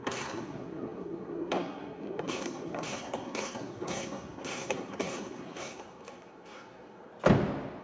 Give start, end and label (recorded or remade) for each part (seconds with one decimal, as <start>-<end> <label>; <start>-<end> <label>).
0.0-7.1 remade; 7.1-7.8 recorded